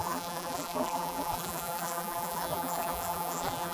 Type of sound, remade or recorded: remade